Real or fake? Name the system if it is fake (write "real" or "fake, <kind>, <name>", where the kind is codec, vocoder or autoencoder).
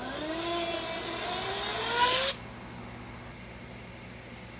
real